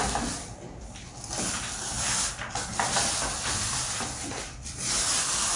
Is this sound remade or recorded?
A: recorded